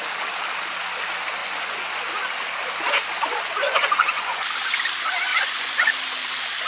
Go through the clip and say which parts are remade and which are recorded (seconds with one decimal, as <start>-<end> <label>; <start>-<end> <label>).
0.0-1.4 recorded; 1.4-2.0 remade; 2.0-3.6 recorded; 3.6-4.5 remade; 4.5-5.3 recorded; 5.3-5.9 remade; 5.9-6.7 recorded